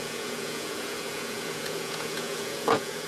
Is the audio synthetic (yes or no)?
yes